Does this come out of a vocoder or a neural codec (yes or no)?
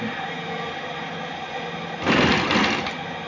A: no